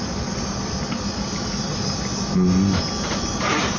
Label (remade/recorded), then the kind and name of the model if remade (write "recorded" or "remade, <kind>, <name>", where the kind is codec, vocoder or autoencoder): recorded